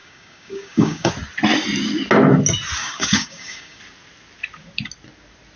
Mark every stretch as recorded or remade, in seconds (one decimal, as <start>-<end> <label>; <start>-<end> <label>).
0.0-1.1 remade; 1.1-2.8 recorded; 2.8-3.8 remade; 3.8-5.6 recorded